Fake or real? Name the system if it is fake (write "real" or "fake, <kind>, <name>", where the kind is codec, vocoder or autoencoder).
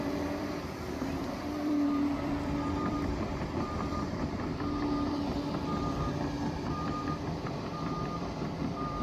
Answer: fake, vocoder, BigVGAN v2